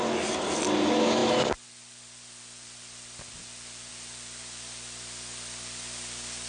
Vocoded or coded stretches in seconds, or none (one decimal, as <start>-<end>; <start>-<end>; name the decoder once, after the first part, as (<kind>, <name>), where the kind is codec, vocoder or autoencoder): none